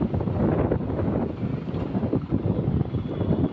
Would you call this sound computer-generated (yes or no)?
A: no